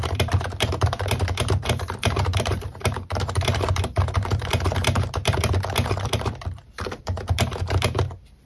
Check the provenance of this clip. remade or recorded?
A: remade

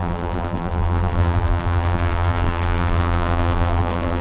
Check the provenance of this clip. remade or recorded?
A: remade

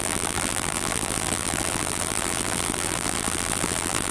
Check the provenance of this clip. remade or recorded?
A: remade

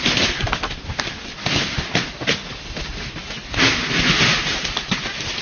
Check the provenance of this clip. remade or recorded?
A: recorded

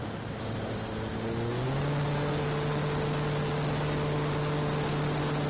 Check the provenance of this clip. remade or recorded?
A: recorded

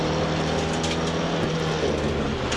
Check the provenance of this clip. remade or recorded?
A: recorded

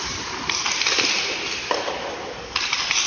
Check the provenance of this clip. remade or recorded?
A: recorded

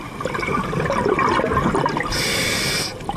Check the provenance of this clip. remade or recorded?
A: recorded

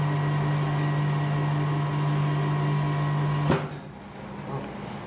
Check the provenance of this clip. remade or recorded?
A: recorded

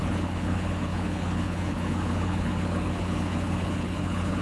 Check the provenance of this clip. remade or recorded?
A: remade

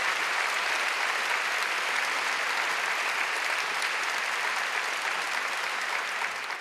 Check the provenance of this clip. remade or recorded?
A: recorded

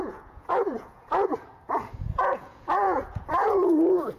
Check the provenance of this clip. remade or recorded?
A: remade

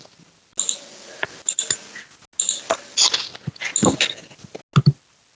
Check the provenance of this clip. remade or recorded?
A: recorded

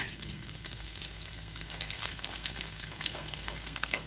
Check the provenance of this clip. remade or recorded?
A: remade